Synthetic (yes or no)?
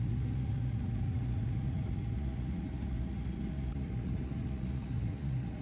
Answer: yes